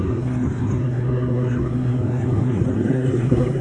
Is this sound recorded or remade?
remade